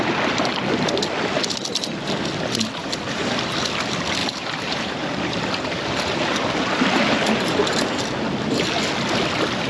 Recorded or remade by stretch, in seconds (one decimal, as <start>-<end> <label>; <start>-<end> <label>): 0.0-2.8 recorded; 2.8-3.3 remade; 3.3-4.2 recorded; 4.2-5.9 remade; 5.9-9.7 recorded